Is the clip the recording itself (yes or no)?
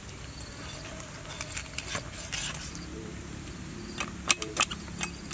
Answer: yes